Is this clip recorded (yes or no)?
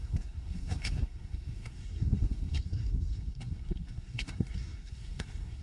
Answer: no